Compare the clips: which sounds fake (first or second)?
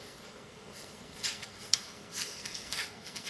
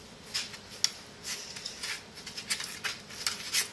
first